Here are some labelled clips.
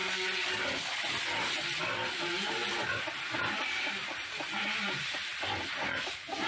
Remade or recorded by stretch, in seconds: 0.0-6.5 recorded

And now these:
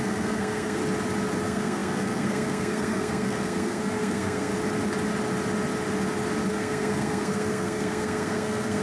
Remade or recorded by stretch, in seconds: 0.0-0.8 remade; 0.8-1.4 recorded; 1.4-4.5 remade; 4.5-6.5 recorded; 6.5-8.8 remade

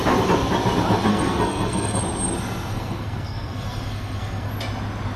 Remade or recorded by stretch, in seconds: 0.0-1.1 recorded; 1.1-2.0 remade; 2.0-2.7 recorded; 2.7-4.5 remade; 4.5-5.2 recorded

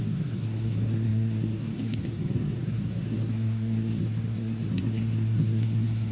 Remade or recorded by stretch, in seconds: 0.0-6.1 remade

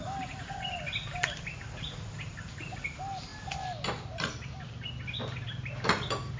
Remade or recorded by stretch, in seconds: 0.0-6.4 recorded

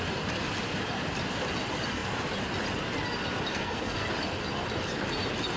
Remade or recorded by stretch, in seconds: 0.0-3.5 recorded; 3.5-4.1 remade; 4.1-5.6 recorded